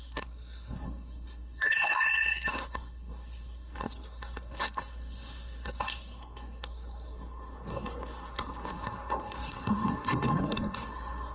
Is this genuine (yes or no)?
no